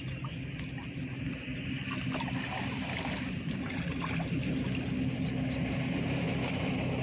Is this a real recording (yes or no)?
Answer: yes